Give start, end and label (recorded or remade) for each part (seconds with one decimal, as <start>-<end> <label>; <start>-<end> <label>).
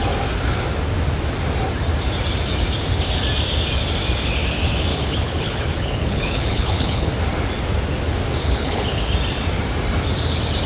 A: 0.0-4.9 recorded; 4.9-7.1 remade; 7.1-8.4 recorded; 8.4-9.0 remade; 9.0-10.7 recorded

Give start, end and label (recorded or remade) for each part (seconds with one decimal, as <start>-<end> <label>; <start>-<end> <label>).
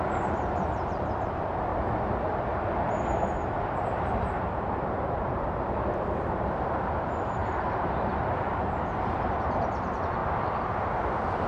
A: 0.0-1.7 remade; 1.7-3.8 recorded; 3.8-10.2 remade; 10.2-10.7 recorded; 10.7-11.5 remade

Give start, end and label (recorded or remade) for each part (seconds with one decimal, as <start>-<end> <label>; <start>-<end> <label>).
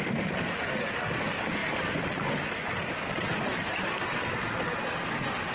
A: 0.0-1.6 recorded; 1.6-2.7 remade; 2.7-3.5 recorded; 3.5-4.0 remade; 4.0-5.5 recorded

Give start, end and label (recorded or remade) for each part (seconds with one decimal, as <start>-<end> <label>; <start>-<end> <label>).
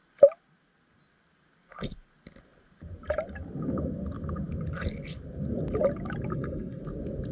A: 0.0-6.3 recorded; 6.3-6.8 remade; 6.8-7.3 recorded